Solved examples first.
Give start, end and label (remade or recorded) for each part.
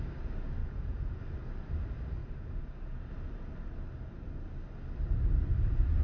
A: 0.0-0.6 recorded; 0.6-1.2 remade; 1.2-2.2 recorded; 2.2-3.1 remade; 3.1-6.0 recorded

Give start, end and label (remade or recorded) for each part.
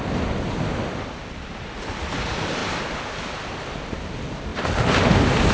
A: 0.0-5.5 recorded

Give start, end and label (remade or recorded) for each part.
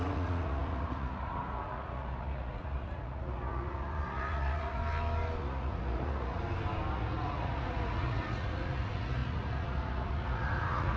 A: 0.0-4.8 remade; 4.8-5.4 recorded; 5.4-6.4 remade; 6.4-6.9 recorded; 6.9-11.0 remade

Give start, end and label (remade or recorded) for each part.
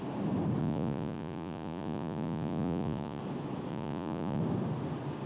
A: 0.0-0.6 recorded; 0.6-3.2 remade; 3.2-3.7 recorded; 3.7-4.4 remade; 4.4-5.3 recorded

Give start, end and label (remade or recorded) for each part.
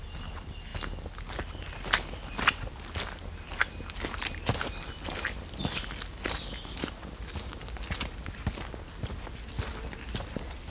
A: 0.0-10.7 recorded